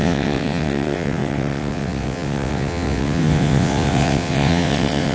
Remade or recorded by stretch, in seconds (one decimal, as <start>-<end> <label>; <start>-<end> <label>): 0.0-5.1 remade